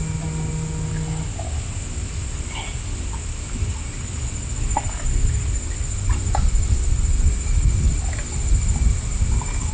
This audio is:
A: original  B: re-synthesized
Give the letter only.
A